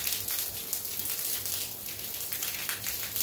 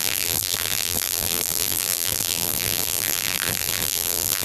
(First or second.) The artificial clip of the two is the second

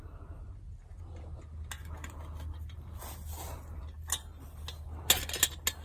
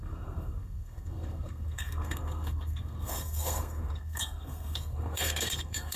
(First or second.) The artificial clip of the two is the second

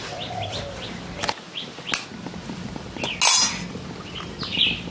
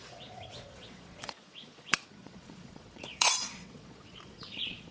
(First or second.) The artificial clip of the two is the second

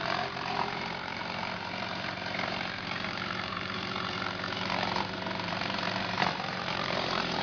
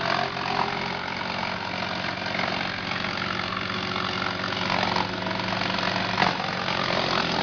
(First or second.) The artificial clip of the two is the first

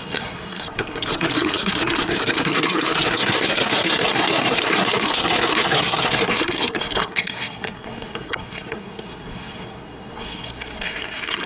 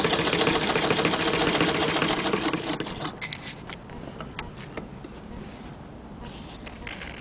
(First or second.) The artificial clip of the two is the first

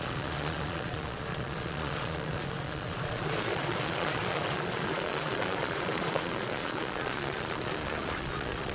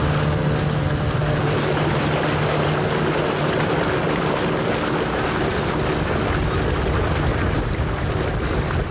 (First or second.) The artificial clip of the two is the first